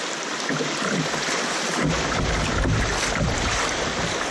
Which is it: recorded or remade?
remade